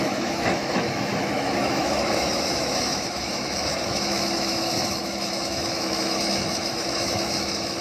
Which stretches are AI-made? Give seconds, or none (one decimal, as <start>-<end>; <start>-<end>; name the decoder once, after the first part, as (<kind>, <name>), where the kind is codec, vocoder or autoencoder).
0.0-7.8 (autoencoder, DAC-VAE)